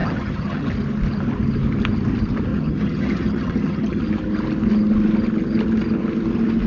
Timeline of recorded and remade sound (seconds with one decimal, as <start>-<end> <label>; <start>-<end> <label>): 0.0-0.7 remade; 0.7-2.5 recorded; 2.5-4.0 remade; 4.0-6.7 recorded